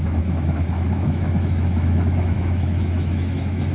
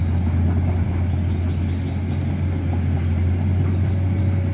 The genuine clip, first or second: second